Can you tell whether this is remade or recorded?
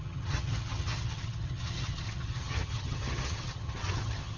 remade